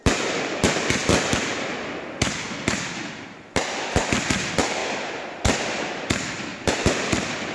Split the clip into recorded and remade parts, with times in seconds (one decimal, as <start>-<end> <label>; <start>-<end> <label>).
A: 0.0-4.8 remade; 4.8-5.9 recorded; 5.9-7.5 remade